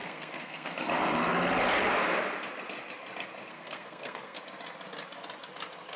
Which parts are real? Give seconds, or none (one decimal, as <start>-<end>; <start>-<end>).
0.7-3.5; 4.4-6.0